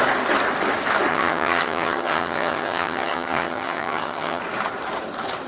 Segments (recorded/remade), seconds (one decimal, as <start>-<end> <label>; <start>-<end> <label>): 0.0-1.1 recorded; 1.1-4.4 remade; 4.4-5.5 recorded